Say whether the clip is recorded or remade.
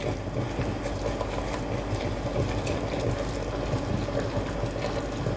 recorded